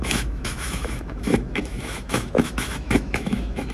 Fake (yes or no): yes